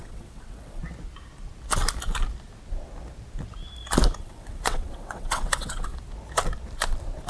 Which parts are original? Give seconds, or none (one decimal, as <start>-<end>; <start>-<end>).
0.8-4.2; 5.9-7.3